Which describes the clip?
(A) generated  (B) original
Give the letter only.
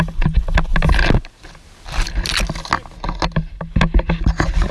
B